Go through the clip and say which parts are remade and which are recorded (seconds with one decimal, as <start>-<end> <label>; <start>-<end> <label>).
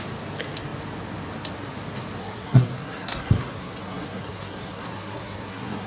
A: 0.0-2.2 recorded; 2.2-5.9 remade